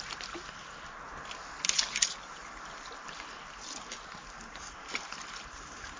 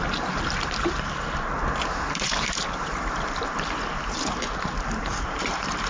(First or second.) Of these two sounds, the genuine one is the first